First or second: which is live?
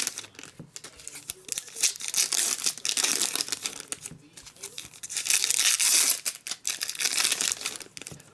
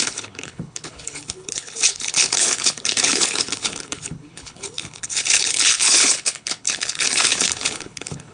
first